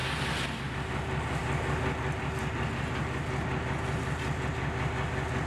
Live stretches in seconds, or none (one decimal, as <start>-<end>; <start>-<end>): 0.0-5.5